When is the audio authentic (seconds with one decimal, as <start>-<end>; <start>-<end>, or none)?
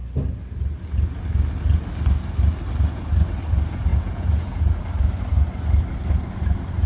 0.0-3.9; 4.8-6.9